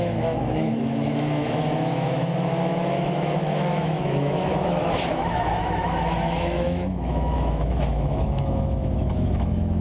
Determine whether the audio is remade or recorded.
remade